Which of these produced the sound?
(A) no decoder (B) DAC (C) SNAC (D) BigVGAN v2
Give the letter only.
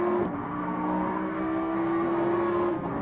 C